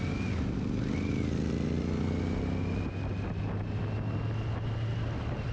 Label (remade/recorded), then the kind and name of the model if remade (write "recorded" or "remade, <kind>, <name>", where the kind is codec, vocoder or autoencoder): recorded